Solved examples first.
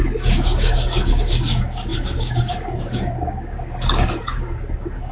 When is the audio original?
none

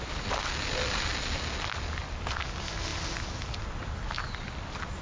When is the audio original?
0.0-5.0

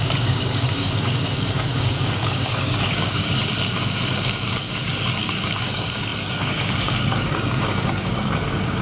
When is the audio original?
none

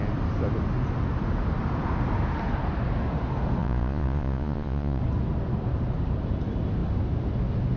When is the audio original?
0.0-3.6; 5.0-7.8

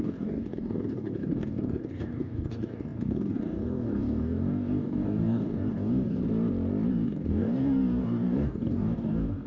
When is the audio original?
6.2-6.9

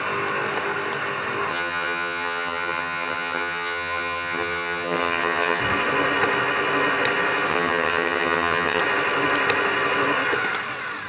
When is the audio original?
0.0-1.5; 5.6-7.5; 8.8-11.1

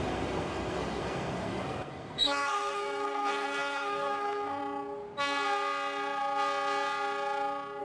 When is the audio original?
4.6-7.8

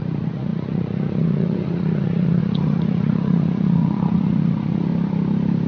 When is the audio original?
4.9-5.7